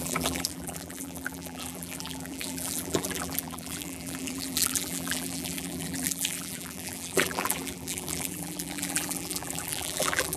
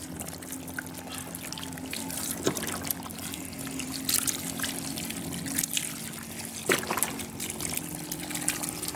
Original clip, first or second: second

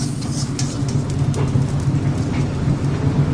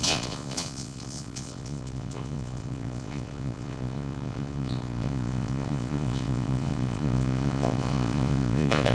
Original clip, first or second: first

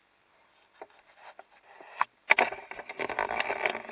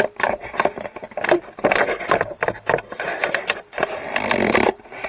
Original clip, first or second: first